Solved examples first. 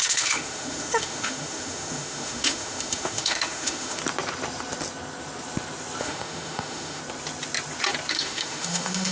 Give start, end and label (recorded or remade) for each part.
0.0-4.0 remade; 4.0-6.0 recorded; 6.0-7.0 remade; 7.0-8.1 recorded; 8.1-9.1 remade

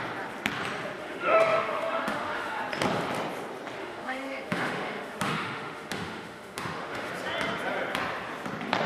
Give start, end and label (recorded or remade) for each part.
0.0-1.0 recorded; 1.0-2.6 remade; 2.6-3.8 recorded; 3.8-7.1 remade; 7.1-8.9 recorded

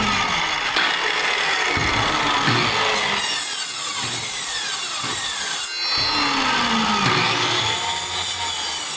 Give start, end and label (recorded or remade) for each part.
0.0-9.0 recorded

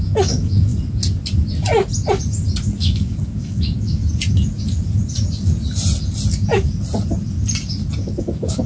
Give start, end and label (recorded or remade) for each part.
0.0-0.7 remade; 0.7-2.8 recorded; 2.8-4.0 remade; 4.0-8.2 recorded; 8.2-8.7 remade

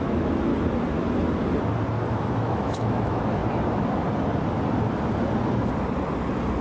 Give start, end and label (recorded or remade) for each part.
0.0-0.5 remade; 0.5-2.1 recorded; 2.1-3.4 remade; 3.4-6.6 recorded

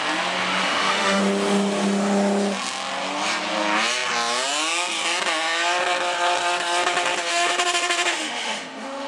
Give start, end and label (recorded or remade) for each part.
0.0-0.6 recorded; 0.6-1.2 remade; 1.2-7.3 recorded; 7.3-9.1 remade

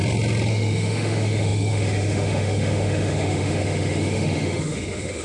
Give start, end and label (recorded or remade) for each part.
0.0-0.5 recorded; 0.5-5.2 remade